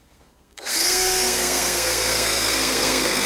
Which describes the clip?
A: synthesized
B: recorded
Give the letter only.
A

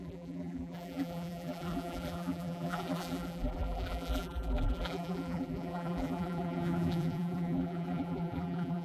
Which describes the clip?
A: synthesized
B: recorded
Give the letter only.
A